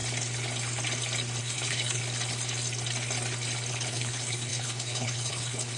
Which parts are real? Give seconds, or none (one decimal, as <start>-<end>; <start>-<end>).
0.0-1.4; 2.0-3.7